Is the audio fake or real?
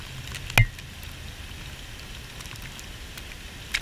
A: real